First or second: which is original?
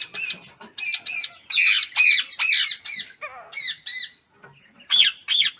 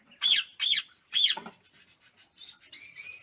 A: first